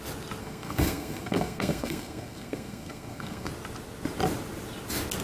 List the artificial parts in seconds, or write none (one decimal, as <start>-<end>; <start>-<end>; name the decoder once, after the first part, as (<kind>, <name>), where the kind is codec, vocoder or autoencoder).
0.4-3.5 (codec, SNAC)